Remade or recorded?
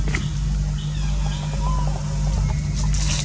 recorded